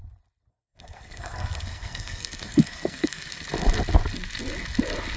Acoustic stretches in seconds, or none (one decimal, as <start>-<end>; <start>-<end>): 0.0-0.5; 3.3-5.2